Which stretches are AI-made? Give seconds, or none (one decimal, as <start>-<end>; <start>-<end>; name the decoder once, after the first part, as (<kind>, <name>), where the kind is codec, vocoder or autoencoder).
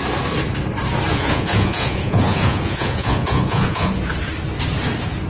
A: 1.1-3.9 (vocoder, Vocos)